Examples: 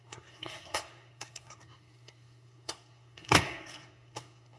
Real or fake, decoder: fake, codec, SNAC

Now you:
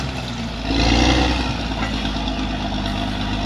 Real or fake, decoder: real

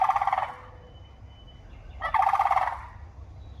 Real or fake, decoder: real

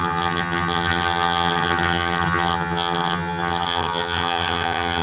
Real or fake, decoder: fake, vocoder, HiFi-GAN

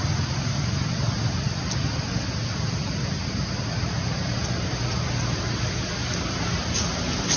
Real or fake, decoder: real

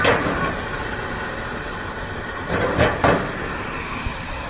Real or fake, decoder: fake, vocoder, BigVGAN v2